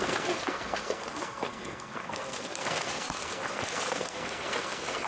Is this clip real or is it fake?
fake